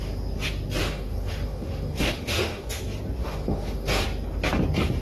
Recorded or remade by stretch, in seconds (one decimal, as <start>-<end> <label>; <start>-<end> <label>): 0.0-0.8 recorded; 0.8-2.8 remade; 2.8-3.2 recorded; 3.2-4.0 remade; 4.0-5.0 recorded